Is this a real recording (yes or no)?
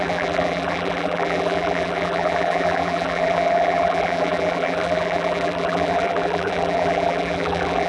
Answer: no